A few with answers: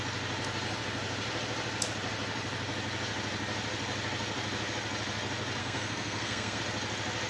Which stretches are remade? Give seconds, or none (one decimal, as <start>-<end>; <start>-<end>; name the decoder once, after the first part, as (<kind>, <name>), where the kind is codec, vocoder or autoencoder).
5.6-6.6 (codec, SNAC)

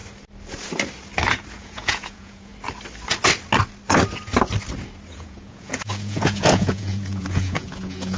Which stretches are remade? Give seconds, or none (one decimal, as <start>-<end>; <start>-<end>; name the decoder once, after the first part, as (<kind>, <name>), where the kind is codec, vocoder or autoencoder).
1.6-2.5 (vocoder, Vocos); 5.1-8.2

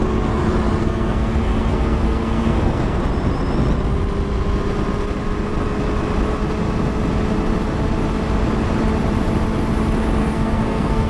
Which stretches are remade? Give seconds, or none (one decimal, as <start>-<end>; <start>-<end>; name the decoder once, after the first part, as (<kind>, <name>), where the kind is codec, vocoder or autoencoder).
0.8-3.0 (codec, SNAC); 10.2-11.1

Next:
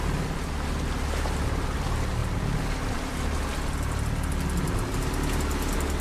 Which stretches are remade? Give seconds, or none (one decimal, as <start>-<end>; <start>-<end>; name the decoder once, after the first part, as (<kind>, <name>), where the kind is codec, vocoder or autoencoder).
none

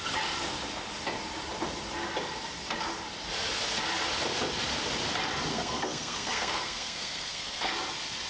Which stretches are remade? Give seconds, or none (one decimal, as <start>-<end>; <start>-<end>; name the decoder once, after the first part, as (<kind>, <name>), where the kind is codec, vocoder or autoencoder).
5.5-7.7 (codec, SNAC)

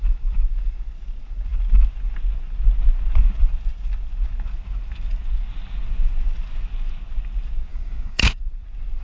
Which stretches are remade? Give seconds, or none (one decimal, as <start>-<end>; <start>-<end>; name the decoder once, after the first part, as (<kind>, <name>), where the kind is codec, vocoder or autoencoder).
7.7-8.4 (codec, DAC)

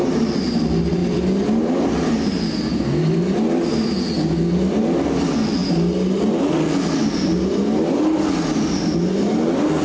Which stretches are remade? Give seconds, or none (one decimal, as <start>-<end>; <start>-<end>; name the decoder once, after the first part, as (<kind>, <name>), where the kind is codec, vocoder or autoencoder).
none

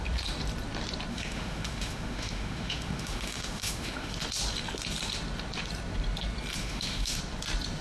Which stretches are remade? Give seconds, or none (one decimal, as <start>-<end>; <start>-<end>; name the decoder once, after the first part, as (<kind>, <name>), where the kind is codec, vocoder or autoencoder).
1.1-4.1 (autoencoder, DAC-VAE); 6.6-7.2